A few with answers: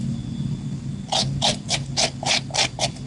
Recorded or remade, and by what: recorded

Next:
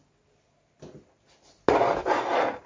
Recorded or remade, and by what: recorded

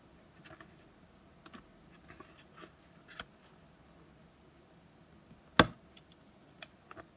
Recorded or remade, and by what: recorded